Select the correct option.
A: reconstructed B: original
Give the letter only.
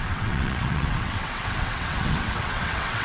A